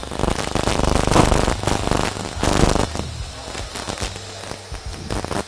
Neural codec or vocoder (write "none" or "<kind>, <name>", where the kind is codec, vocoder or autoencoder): none